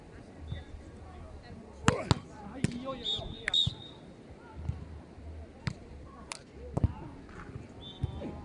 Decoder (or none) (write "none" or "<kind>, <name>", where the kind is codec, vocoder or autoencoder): none